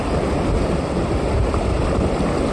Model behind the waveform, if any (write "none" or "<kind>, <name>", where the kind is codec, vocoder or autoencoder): none